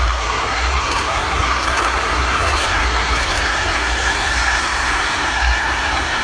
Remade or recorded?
remade